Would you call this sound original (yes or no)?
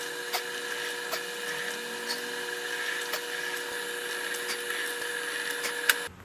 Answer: yes